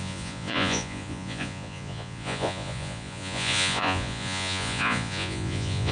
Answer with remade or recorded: remade